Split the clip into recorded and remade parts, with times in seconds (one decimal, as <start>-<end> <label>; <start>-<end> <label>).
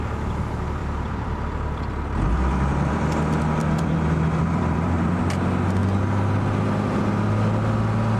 0.0-0.8 recorded; 0.8-5.2 remade; 5.2-8.2 recorded